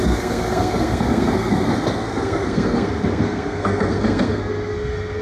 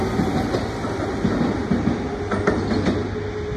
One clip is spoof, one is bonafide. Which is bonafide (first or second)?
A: second